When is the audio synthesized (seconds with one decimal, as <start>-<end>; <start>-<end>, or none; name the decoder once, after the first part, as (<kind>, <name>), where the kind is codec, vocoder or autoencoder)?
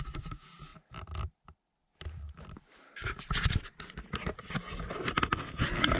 none